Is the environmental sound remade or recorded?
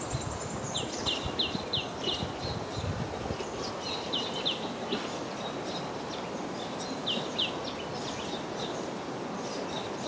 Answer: recorded